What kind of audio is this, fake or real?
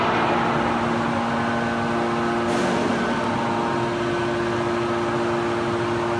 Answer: real